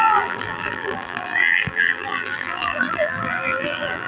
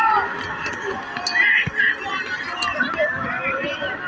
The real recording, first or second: second